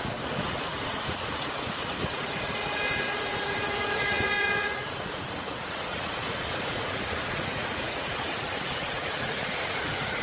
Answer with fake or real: fake